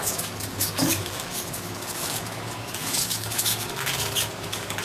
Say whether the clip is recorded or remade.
remade